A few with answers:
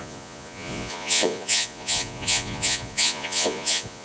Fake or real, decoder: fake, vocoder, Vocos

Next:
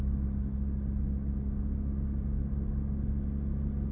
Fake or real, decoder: real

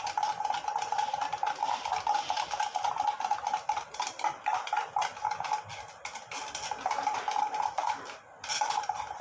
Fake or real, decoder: real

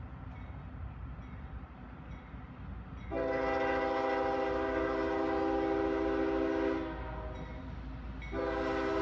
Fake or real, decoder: real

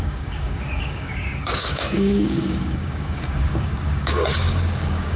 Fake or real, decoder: fake, codec, DAC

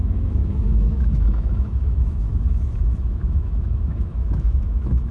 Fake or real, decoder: fake, autoencoder, DAC-VAE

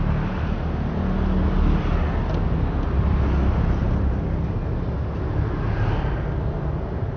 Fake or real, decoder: real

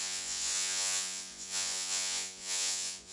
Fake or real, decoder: fake, vocoder, Vocos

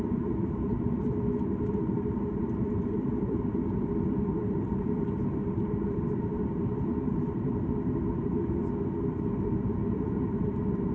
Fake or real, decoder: fake, vocoder, BigVGAN v2